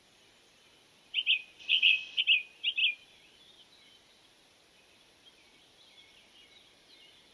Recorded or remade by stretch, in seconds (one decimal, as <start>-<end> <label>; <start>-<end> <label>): 0.0-1.6 recorded; 1.6-2.2 remade; 2.2-7.3 recorded